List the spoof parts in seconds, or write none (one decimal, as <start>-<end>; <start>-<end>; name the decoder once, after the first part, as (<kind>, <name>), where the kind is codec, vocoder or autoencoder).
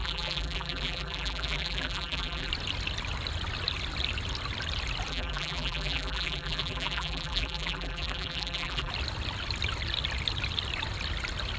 0.0-2.5 (vocoder, BigVGAN v2); 5.1-8.9